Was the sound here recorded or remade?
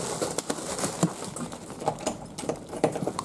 recorded